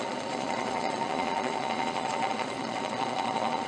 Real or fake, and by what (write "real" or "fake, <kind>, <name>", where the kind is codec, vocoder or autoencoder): fake, vocoder, Vocos